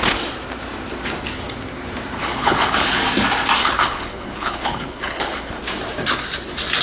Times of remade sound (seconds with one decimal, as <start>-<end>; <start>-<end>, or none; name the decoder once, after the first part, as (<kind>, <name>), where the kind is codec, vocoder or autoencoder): 2.2-3.0 (codec, HILCodec); 3.6-5.5